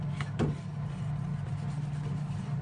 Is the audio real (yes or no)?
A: yes